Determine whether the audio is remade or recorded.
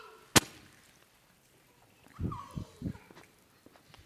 recorded